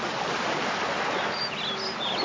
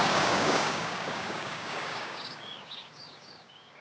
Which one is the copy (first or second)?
second